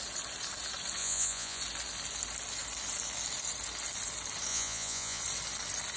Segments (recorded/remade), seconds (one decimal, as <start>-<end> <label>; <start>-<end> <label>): 0.0-1.0 recorded; 1.0-1.6 remade; 1.6-4.5 recorded; 4.5-5.2 remade; 5.2-6.0 recorded